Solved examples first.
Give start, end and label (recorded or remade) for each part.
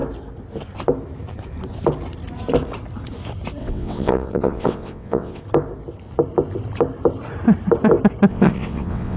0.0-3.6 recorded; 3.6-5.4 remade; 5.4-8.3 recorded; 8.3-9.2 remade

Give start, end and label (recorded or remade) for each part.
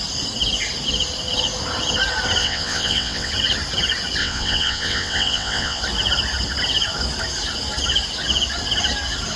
0.0-2.4 recorded; 2.4-3.3 remade; 3.3-4.2 recorded; 4.2-5.8 remade; 5.8-9.4 recorded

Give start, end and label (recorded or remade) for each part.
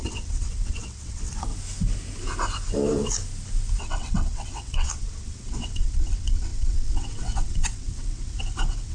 0.0-1.5 remade; 1.5-3.8 recorded; 3.8-8.9 remade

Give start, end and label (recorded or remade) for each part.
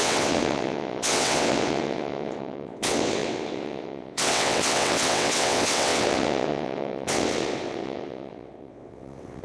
0.0-9.4 remade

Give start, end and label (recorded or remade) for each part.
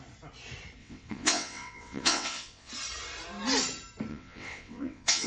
0.0-0.8 recorded; 0.8-2.7 remade; 2.7-4.1 recorded; 4.1-5.3 remade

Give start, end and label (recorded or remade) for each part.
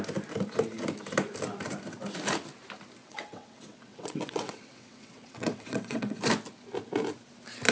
0.0-3.0 recorded; 3.0-6.2 remade; 6.2-7.7 recorded